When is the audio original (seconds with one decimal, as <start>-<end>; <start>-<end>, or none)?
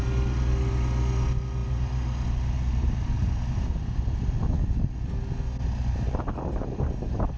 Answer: 0.0-7.4